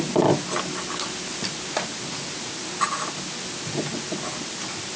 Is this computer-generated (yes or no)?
no